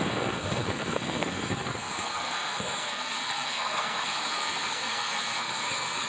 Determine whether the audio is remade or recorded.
remade